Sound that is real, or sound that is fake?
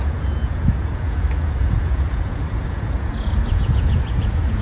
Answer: fake